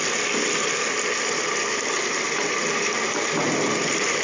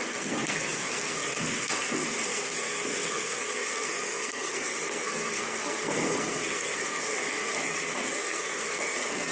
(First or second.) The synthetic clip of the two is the second